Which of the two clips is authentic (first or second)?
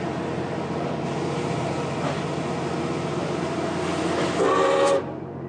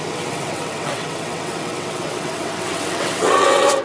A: first